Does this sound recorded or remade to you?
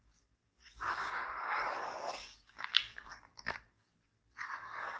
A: remade